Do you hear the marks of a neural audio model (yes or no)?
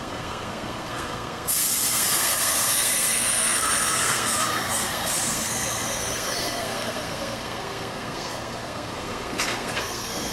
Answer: yes